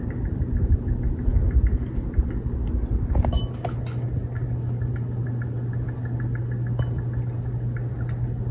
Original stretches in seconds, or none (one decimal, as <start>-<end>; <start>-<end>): 0.0-8.5